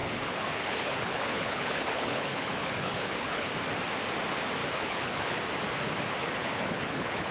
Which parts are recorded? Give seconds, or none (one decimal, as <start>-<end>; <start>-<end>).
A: 3.5-4.6; 5.4-6.2